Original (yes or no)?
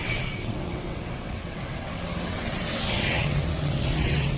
no